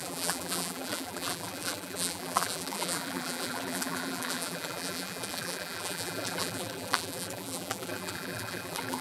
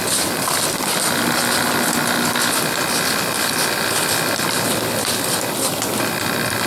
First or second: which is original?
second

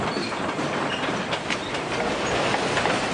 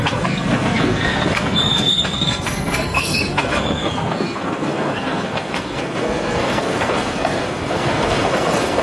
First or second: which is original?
first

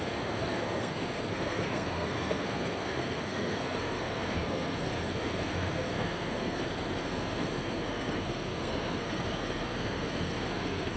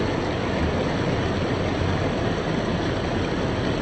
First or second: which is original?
second